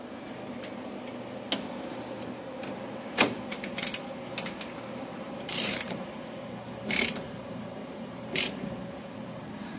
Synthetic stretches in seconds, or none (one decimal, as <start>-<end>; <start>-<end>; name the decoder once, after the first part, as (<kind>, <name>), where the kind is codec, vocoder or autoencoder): 5.1-9.8 (vocoder, BigVGAN v2)